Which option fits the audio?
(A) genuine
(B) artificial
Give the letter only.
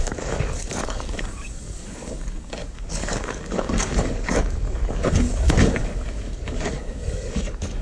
B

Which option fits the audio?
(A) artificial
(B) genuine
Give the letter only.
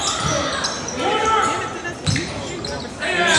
B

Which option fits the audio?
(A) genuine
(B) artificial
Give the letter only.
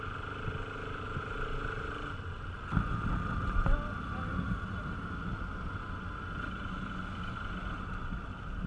A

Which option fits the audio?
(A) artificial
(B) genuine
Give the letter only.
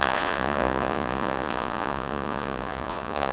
A